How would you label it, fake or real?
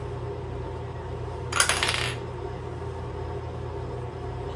real